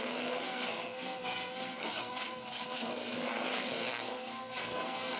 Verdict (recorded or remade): remade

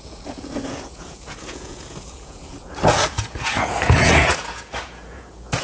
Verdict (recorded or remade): remade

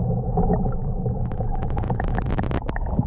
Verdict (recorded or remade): remade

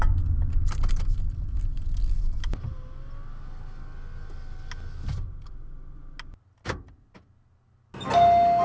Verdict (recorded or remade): recorded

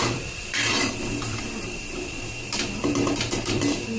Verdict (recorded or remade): remade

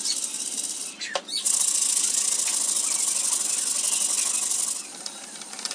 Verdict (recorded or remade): recorded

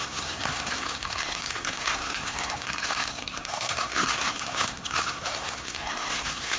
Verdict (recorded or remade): remade